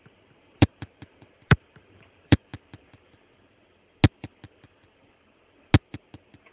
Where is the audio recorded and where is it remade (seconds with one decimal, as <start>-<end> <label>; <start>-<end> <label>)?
0.0-2.5 remade; 2.5-6.5 recorded